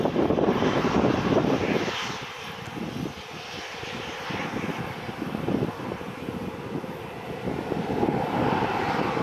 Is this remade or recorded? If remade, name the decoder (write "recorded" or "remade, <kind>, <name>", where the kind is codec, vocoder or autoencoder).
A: recorded